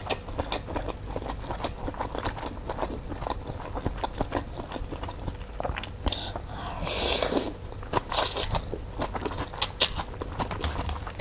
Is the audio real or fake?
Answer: real